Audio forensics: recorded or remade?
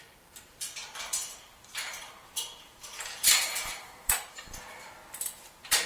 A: remade